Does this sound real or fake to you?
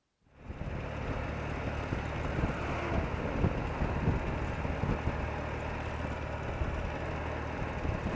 real